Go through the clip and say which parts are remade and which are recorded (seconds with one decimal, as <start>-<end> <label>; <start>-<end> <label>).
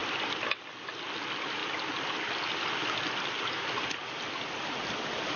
0.0-5.4 recorded